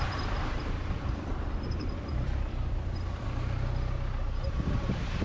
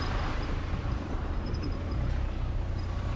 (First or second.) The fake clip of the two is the first